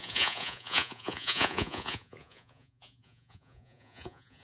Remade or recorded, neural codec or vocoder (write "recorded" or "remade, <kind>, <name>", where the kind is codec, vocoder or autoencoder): remade, vocoder, Vocos